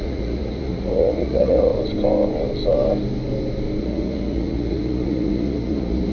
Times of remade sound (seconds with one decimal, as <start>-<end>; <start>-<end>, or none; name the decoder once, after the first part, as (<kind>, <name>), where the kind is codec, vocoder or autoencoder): 0.0-1.7 (vocoder, Vocos); 3.8-6.1